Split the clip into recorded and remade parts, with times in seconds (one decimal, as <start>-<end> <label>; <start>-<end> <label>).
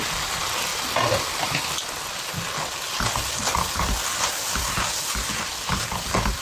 0.0-6.4 recorded